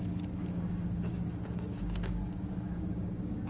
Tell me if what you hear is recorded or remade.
remade